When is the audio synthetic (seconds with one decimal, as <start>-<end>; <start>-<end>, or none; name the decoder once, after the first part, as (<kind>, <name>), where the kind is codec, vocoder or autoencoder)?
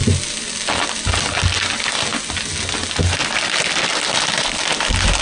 none